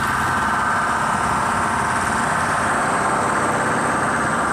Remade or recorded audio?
recorded